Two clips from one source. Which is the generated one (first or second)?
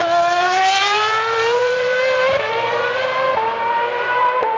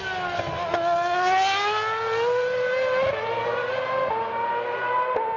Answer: first